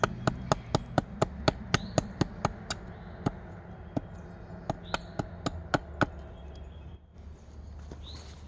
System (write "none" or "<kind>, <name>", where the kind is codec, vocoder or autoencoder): none